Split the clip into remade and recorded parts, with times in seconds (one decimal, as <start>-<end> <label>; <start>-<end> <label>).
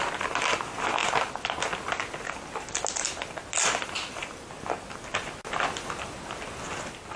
0.0-7.2 recorded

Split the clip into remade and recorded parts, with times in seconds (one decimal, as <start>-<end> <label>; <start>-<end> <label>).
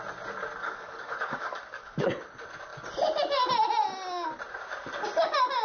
0.0-0.6 recorded; 0.6-2.0 remade; 2.0-5.6 recorded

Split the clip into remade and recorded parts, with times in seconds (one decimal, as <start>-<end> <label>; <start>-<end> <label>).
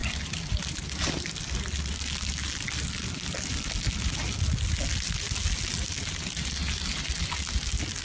0.0-1.6 remade; 1.6-8.0 recorded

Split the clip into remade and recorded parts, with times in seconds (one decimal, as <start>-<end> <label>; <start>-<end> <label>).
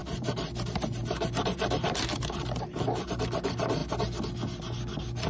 0.0-3.2 remade; 3.2-5.3 recorded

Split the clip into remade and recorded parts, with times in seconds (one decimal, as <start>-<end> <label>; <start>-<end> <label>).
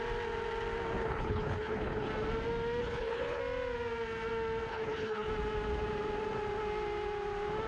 0.0-1.0 recorded; 1.0-2.1 remade; 2.1-2.8 recorded; 2.8-3.4 remade; 3.4-4.7 recorded; 4.7-5.3 remade; 5.3-7.7 recorded